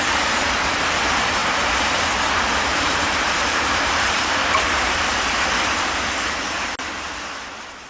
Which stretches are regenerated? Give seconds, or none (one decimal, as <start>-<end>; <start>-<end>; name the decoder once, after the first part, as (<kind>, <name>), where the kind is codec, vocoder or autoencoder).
1.4-2.0 (vocoder, BigVGAN v2); 2.7-4.9